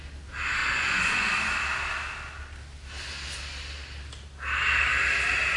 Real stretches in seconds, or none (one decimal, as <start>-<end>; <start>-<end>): 0.0-0.6; 1.3-5.6